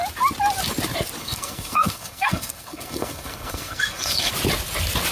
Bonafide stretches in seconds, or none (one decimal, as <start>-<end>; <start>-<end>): 0.0-1.2; 4.3-5.1